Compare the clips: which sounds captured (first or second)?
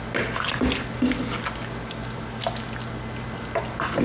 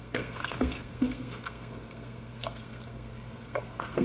first